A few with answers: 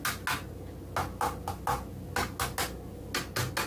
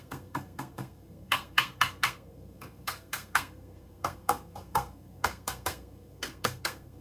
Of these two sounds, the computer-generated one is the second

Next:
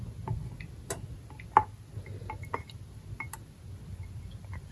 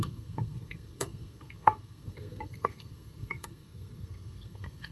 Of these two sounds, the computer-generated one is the second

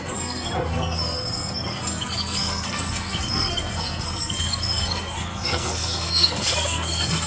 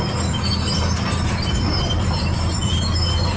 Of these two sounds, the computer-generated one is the first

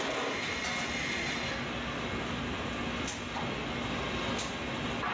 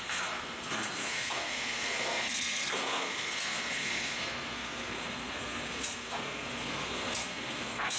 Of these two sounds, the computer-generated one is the second